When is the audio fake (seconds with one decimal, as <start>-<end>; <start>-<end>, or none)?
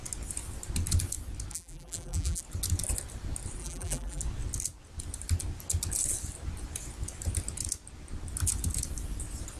1.5-2.4; 3.6-4.2